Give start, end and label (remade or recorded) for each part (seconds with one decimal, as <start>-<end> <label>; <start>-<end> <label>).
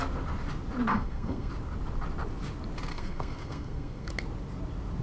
0.0-0.9 recorded; 0.9-1.5 remade; 1.5-2.9 recorded; 2.9-4.1 remade; 4.1-5.0 recorded